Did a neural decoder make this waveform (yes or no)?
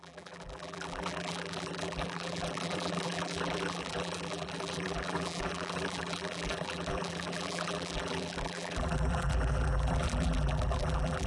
yes